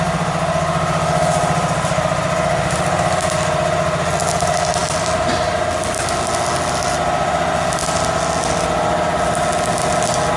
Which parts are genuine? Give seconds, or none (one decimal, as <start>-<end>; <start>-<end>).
0.0-10.4